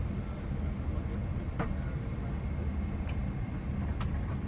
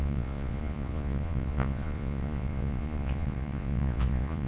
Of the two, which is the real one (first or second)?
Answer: first